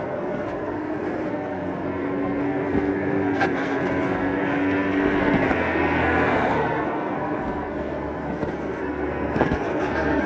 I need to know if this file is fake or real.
fake